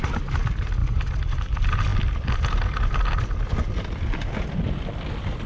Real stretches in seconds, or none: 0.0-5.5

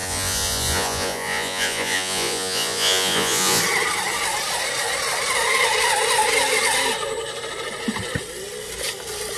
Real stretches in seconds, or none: 3.6-9.4

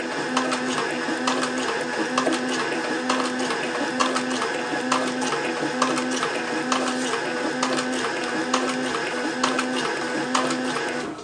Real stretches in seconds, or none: 0.0-11.2

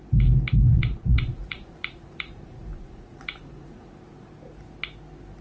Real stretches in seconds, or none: 0.0-0.7; 3.9-5.4

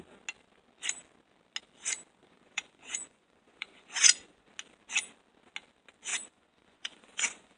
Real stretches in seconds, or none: 0.0-2.2; 4.5-6.1

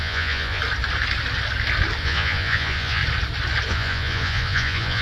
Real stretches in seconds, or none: 0.6-2.0; 3.0-3.7

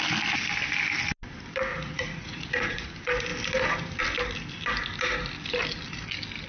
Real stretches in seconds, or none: 0.0-1.7; 2.9-6.5

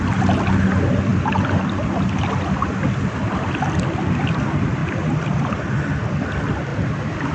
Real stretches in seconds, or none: 0.0-7.3